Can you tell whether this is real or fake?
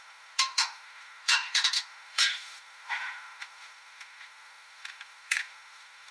fake